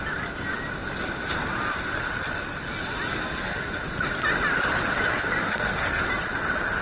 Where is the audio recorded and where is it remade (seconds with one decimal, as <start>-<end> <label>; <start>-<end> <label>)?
0.0-5.1 recorded; 5.1-6.0 remade; 6.0-6.8 recorded